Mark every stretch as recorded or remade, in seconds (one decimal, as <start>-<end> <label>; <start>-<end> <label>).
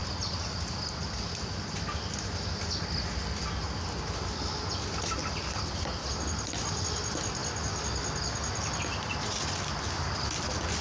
0.0-10.8 recorded